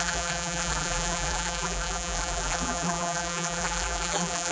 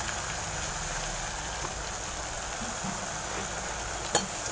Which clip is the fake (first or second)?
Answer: first